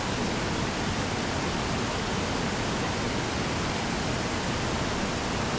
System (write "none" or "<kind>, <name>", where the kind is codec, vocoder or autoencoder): none